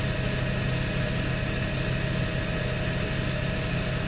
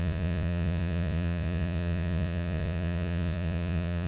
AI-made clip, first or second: second